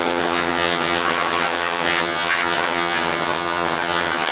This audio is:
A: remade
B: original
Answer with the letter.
A